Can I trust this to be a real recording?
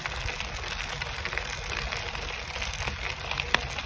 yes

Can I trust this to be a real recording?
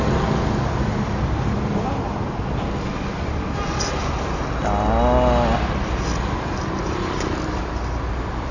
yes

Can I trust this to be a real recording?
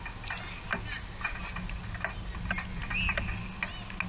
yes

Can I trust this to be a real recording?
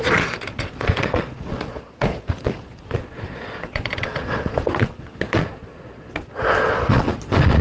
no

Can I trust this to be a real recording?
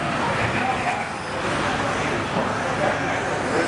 yes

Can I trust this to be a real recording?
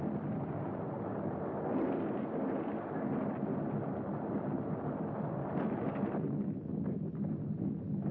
yes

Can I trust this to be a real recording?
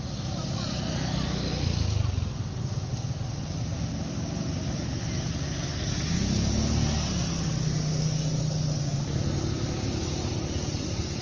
yes